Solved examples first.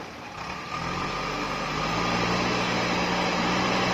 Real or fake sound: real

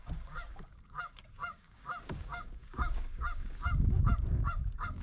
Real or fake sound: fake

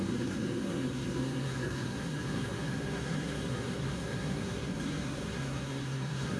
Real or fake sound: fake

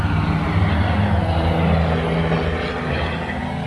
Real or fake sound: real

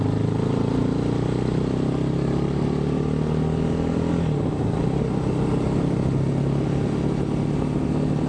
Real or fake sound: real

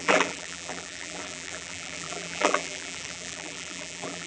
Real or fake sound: fake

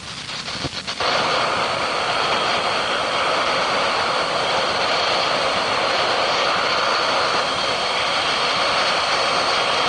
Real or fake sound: real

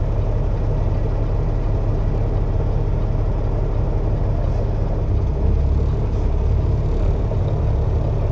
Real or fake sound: real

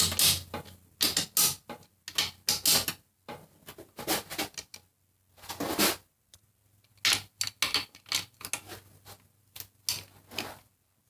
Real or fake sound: real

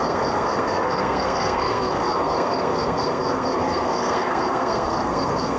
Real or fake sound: fake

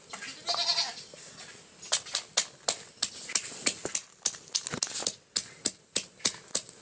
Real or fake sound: real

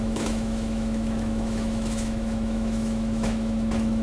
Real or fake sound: fake